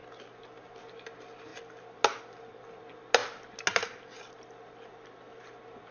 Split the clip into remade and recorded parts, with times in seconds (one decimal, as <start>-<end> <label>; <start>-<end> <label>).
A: 0.0-5.9 recorded